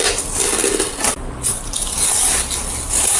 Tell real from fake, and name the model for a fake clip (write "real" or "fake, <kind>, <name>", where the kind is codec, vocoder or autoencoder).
real